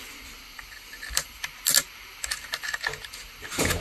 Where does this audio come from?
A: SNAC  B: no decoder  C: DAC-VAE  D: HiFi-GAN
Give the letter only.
B